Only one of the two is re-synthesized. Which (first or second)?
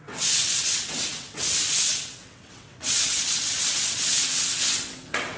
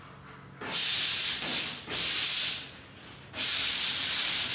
first